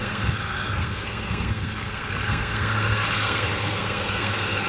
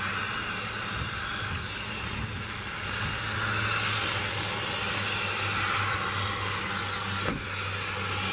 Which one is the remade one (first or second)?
first